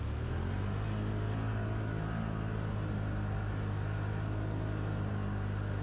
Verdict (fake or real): real